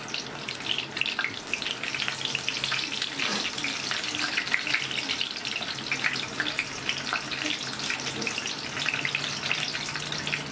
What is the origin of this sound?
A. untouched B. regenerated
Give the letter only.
A